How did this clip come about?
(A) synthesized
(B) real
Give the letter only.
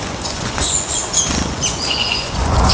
A